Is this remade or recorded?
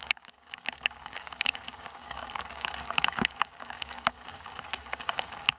remade